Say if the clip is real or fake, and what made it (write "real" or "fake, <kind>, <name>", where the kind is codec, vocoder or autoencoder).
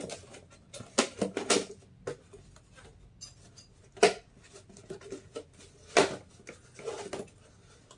real